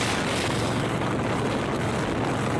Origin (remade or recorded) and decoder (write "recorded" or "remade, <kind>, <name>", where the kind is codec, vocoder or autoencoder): recorded